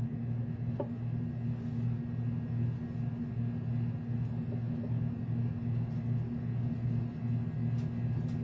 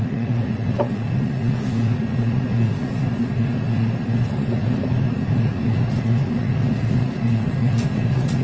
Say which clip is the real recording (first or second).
first